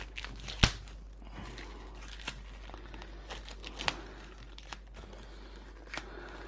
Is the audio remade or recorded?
recorded